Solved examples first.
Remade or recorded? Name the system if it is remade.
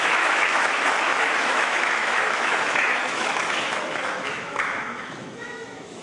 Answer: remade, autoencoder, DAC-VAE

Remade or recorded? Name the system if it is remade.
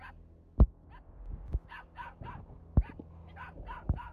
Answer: recorded